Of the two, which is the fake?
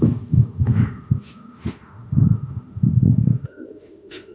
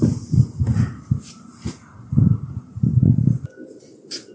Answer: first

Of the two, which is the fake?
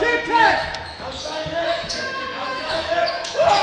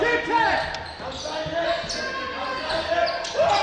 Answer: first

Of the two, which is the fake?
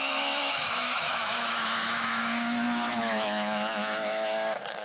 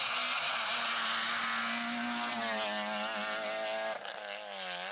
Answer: first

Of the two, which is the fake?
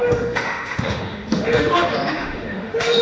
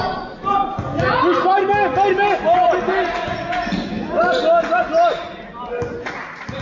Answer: first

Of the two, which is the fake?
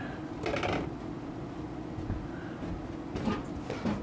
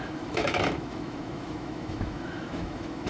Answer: second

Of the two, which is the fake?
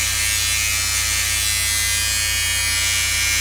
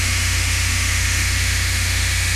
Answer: second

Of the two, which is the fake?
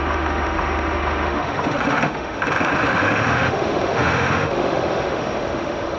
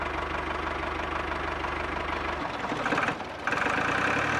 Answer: first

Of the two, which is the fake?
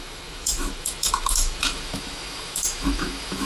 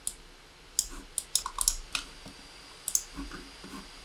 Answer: first